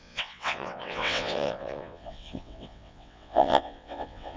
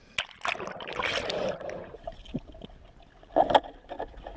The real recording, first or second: second